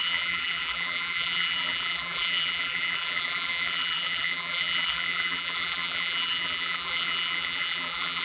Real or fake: fake